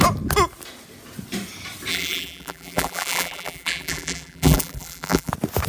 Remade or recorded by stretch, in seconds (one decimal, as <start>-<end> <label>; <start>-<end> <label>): 0.0-1.9 recorded; 1.9-5.3 remade; 5.3-5.7 recorded